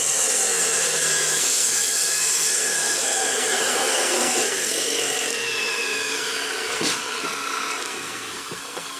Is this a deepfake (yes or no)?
yes